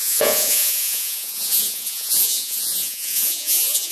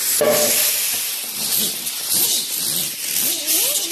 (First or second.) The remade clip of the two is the first